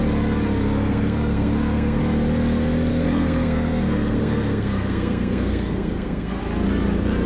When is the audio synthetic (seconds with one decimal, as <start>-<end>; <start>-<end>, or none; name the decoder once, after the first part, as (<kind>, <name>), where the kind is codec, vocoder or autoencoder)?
0.6-2.0 (codec, SNAC); 2.9-6.4